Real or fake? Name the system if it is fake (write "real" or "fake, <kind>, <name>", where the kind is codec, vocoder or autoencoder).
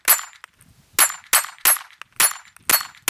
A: real